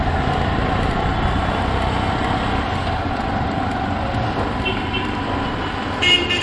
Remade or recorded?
recorded